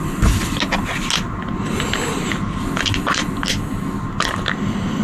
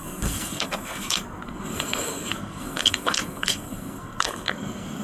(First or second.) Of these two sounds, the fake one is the second